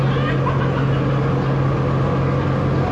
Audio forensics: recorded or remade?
recorded